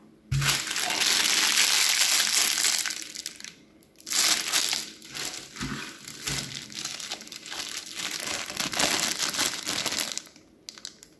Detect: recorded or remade recorded